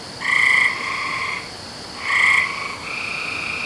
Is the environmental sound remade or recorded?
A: recorded